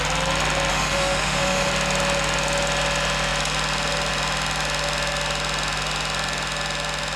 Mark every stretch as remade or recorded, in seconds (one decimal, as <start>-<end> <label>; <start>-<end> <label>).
0.0-0.7 recorded; 0.7-1.7 remade; 1.7-7.2 recorded